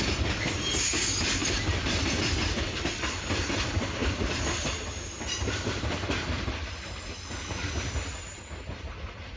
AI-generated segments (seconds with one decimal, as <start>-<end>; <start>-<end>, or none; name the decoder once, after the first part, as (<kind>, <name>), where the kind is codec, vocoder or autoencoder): 1.4-2.9 (vocoder, BigVGAN v2); 4.0-5.8